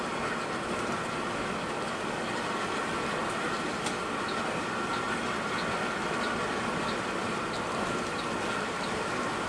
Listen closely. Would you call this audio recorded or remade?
recorded